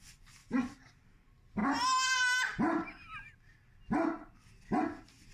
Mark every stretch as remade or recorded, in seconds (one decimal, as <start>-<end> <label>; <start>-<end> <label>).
0.0-5.3 recorded